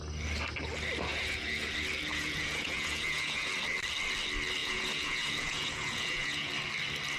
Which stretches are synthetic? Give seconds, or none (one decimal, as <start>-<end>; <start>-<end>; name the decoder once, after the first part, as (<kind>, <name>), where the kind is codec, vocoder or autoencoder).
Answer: 1.1-1.7 (vocoder, Vocos); 2.1-3.5; 4.6-6.5

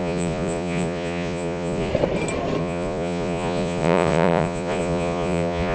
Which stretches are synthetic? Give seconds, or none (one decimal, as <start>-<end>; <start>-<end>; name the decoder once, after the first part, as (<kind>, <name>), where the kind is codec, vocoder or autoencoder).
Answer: 0.0-1.9 (vocoder, Vocos); 2.6-5.7